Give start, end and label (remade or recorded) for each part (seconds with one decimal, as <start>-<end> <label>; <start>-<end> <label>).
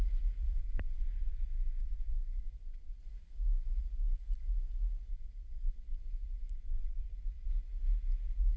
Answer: 0.0-0.6 recorded; 0.6-3.0 remade; 3.0-5.1 recorded; 5.1-7.5 remade; 7.5-8.6 recorded